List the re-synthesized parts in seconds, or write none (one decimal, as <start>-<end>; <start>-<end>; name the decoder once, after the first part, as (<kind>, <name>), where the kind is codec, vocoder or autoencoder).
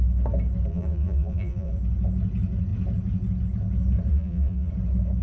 0.7-1.7 (vocoder, BigVGAN v2); 4.1-4.7